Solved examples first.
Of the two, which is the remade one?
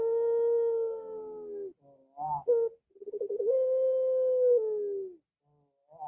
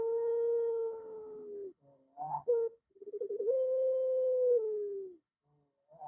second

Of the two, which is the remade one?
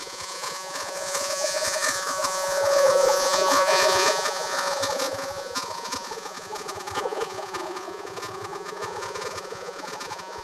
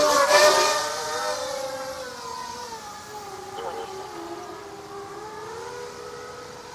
first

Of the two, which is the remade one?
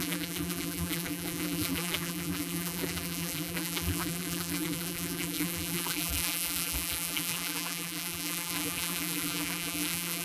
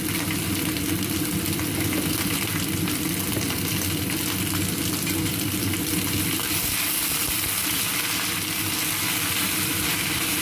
first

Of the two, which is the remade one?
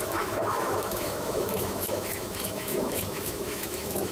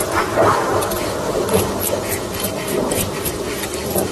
first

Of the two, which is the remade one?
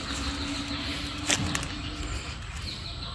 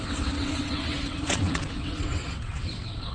second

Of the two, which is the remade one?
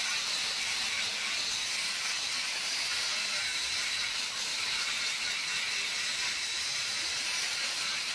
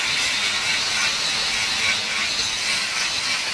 first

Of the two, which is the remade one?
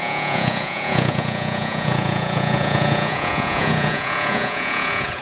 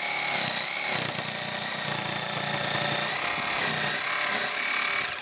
first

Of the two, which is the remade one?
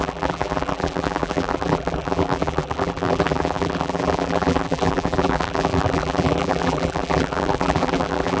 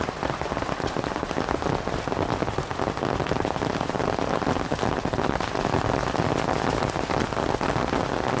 first